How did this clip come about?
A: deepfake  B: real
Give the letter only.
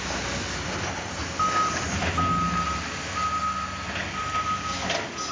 B